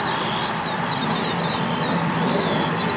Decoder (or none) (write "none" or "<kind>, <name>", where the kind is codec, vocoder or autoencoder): none